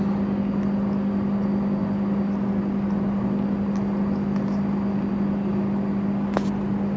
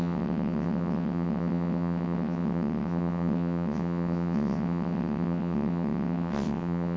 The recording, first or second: first